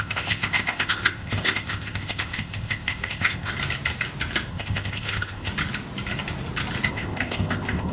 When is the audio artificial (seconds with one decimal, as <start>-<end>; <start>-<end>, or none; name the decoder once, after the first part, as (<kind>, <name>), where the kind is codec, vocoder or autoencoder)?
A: 0.0-3.5 (codec, ZipCodec); 4.5-5.5; 6.9-7.9

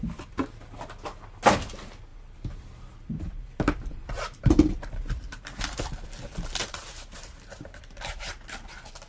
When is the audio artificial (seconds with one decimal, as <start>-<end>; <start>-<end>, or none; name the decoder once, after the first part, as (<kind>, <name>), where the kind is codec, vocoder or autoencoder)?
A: 2.1-5.8 (vocoder, BigVGAN v2); 6.6-8.3

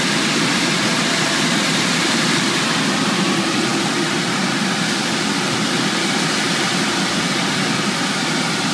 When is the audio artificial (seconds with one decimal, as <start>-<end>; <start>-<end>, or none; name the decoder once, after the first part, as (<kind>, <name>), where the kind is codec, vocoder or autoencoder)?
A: none

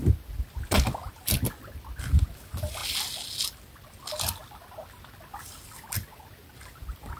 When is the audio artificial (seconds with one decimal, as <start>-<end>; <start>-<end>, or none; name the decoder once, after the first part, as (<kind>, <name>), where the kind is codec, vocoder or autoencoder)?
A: none

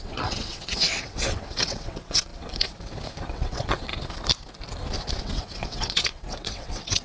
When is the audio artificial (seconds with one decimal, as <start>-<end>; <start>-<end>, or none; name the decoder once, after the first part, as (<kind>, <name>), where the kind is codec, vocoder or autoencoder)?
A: 0.0-2.3 (vocoder, WaveNeXt); 3.3-3.9; 5.2-7.0

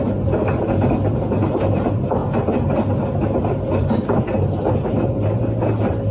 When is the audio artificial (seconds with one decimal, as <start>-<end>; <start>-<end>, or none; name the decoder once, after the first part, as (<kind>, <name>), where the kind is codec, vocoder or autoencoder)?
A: none

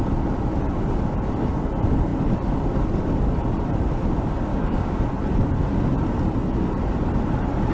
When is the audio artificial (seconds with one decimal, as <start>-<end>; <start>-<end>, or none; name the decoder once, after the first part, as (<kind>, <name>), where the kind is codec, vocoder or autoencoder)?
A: 4.5-5.0 (codec, DAC)

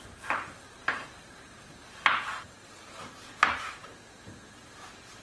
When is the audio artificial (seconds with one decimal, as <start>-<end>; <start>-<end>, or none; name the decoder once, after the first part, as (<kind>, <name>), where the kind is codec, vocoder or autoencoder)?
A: 0.0-5.2 (vocoder, BigVGAN v2)